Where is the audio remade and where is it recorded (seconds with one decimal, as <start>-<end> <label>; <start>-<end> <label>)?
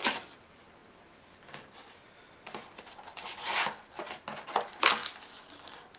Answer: 0.0-6.0 recorded